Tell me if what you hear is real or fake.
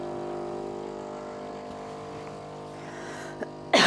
real